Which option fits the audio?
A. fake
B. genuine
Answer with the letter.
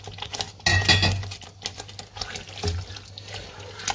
B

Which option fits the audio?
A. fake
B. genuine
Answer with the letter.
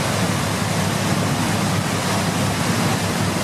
B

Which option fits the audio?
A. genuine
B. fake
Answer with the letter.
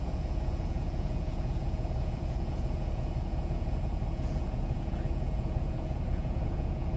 B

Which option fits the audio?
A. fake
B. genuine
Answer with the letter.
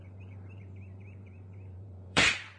A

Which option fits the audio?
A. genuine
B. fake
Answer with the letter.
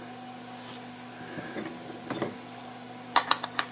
A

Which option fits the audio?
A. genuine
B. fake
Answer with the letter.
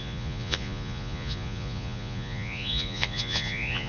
B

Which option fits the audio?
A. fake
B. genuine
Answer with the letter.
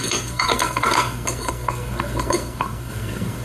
A